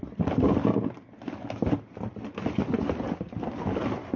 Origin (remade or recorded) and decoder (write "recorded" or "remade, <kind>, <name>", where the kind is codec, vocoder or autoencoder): recorded